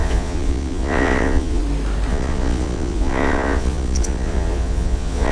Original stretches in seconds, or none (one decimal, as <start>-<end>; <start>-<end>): 1.6-2.1